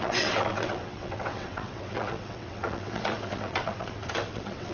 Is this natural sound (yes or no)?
no